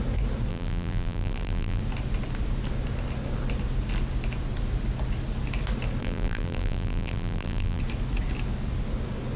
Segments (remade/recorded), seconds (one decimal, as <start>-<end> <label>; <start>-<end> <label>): 0.0-0.5 recorded; 0.5-1.8 remade; 1.8-6.0 recorded; 6.0-7.8 remade; 7.8-9.4 recorded